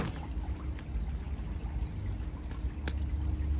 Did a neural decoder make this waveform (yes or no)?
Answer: no